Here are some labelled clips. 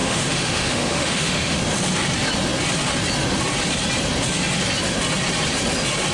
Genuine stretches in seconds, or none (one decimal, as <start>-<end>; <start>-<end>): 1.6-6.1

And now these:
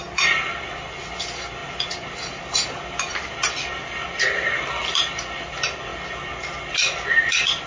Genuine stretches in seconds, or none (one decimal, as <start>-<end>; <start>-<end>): 0.0-7.7

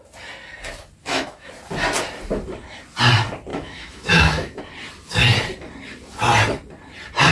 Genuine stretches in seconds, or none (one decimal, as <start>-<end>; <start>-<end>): 0.0-1.0; 1.5-3.5; 4.6-7.3

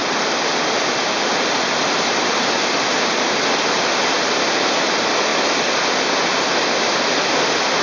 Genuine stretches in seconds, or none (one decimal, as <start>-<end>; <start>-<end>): 0.0-7.8

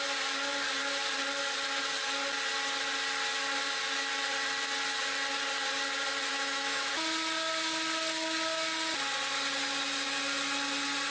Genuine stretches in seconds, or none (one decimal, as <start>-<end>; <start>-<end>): 0.0-6.3; 6.9-11.1

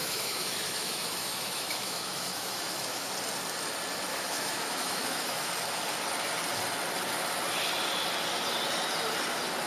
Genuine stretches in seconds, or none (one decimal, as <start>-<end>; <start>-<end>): 3.1-4.1; 5.5-9.7

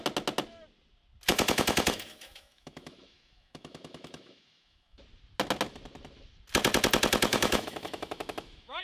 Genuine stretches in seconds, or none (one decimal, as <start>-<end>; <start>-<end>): 0.0-1.3; 5.0-7.3